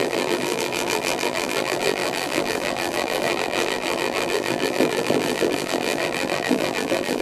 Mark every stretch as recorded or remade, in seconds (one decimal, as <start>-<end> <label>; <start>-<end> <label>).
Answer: 0.0-7.2 remade